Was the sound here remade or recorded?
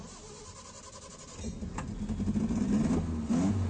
recorded